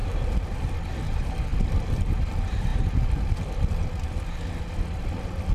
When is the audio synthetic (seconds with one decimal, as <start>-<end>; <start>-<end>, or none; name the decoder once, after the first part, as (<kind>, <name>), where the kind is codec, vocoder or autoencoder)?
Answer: 0.9-2.7 (vocoder, BigVGAN v2); 5.0-5.5